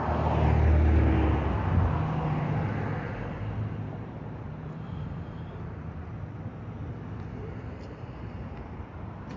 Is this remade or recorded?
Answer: recorded